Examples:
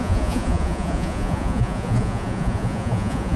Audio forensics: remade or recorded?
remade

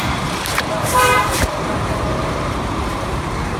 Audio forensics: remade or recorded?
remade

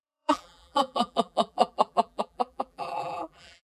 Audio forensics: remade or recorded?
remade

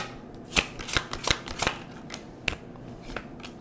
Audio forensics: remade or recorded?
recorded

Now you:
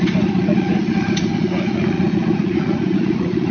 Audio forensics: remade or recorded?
remade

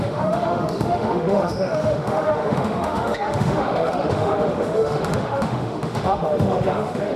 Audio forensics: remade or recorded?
remade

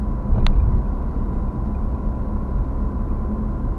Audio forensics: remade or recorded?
recorded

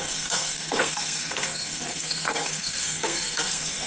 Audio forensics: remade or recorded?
remade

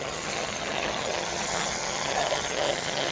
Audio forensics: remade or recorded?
remade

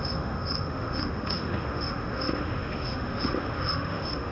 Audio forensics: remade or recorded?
remade